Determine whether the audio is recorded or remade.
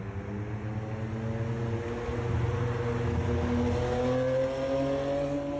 recorded